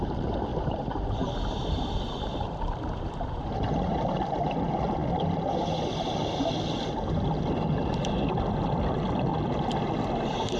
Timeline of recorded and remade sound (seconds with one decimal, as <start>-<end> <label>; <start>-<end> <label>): 0.0-0.5 recorded; 0.5-4.2 remade; 4.2-10.6 recorded